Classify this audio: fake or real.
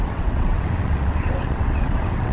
fake